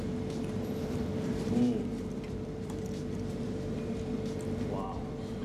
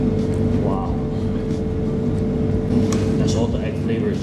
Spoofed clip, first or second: first